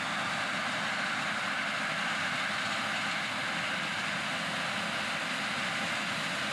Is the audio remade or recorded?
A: recorded